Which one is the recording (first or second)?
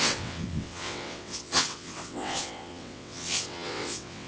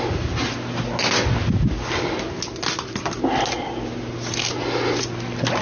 second